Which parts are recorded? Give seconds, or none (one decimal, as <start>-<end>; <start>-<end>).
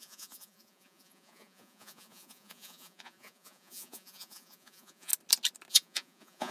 5.1-5.7